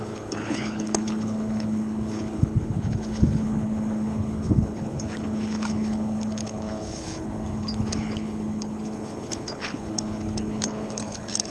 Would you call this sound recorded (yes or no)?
no